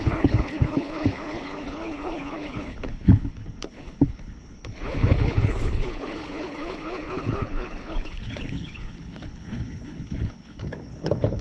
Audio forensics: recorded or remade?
remade